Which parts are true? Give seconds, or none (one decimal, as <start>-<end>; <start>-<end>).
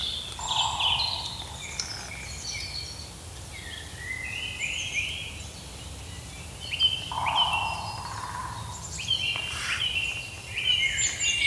0.0-4.3; 6.5-11.5